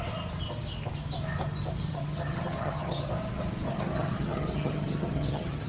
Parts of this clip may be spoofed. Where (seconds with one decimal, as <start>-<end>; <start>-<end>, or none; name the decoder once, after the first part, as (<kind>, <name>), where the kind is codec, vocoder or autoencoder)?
1.9-3.1 (vocoder, HiFi-GAN); 3.7-5.7